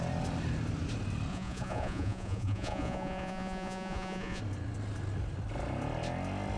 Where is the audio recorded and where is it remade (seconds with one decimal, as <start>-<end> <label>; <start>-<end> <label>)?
0.0-1.3 recorded; 1.3-4.4 remade; 4.4-6.6 recorded